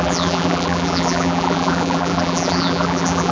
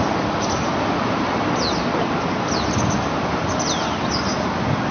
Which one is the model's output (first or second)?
first